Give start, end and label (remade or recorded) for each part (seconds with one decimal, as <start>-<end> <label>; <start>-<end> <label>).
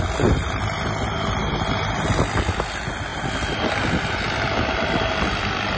0.0-5.8 recorded